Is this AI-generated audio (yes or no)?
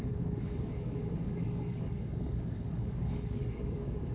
yes